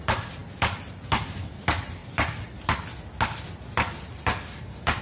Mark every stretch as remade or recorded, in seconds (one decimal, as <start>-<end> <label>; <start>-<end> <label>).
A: 0.0-5.0 recorded